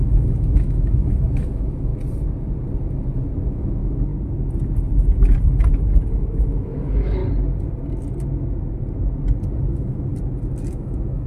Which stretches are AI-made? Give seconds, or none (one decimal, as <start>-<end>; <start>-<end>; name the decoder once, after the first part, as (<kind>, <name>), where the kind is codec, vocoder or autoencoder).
0.0-1.9 (autoencoder, DAC-VAE); 3.5-4.1; 6.1-7.2; 9.6-10.1; 10.7-11.3